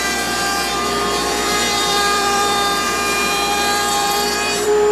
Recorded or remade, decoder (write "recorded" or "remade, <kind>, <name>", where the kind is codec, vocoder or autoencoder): remade, vocoder, BigVGAN v2